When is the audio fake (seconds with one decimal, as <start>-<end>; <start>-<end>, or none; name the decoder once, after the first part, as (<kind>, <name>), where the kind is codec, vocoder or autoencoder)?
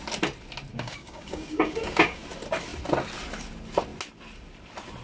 0.7-2.2 (codec, DAC)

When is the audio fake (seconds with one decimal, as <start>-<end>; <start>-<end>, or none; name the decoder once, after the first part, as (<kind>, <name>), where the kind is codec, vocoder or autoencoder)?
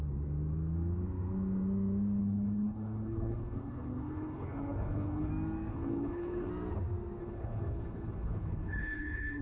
2.2-5.3 (codec, HILCodec); 5.7-6.5; 7.2-9.4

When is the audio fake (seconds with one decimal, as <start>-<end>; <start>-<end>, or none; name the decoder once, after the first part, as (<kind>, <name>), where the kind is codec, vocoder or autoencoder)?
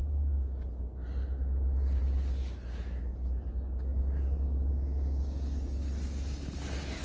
none